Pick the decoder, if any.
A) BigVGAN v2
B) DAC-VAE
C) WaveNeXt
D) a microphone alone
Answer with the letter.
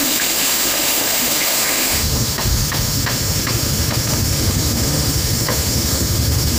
B